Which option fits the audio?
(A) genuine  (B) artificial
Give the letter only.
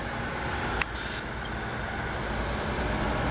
A